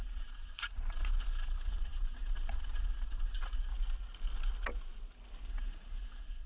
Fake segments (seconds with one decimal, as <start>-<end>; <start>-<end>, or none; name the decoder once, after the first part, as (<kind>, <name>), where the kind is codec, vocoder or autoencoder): 0.0-3.7 (vocoder, Vocos); 5.5-6.5